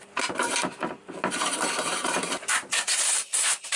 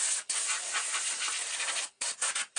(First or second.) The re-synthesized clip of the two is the first